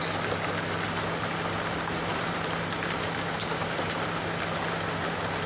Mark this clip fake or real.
real